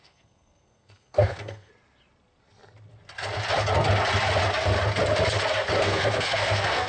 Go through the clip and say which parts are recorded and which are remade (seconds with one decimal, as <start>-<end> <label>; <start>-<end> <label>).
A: 0.0-1.7 remade; 1.7-5.8 recorded; 5.8-6.9 remade